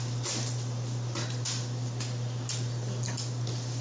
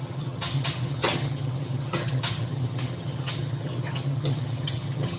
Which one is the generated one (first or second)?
second